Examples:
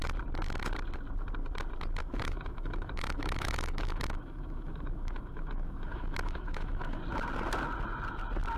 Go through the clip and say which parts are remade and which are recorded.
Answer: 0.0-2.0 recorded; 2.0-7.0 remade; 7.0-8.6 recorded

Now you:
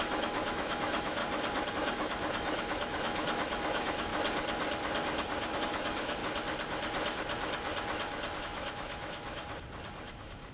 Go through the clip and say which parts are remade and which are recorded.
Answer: 0.0-1.2 remade; 1.2-1.7 recorded; 1.7-4.1 remade; 4.1-5.6 recorded; 5.6-6.2 remade; 6.2-8.4 recorded; 8.4-9.4 remade; 9.4-10.1 recorded; 10.1-10.5 remade

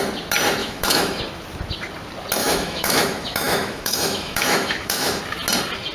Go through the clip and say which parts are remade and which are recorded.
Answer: 0.0-0.6 recorded; 0.6-1.2 remade; 1.2-2.4 recorded; 2.4-5.2 remade; 5.2-5.9 recorded

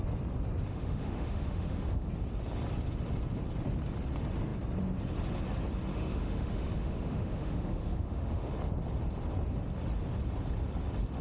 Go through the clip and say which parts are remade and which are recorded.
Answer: 0.0-0.7 recorded; 0.7-2.1 remade; 2.1-5.9 recorded; 5.9-8.5 remade; 8.5-11.2 recorded

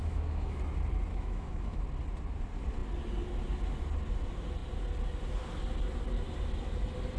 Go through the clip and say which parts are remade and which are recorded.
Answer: 0.0-0.6 remade; 0.6-1.1 recorded; 1.1-1.8 remade; 1.8-7.2 recorded

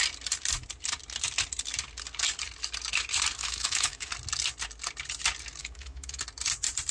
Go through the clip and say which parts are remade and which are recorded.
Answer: 0.0-3.4 recorded; 3.4-4.1 remade; 4.1-5.6 recorded; 5.6-6.2 remade; 6.2-6.9 recorded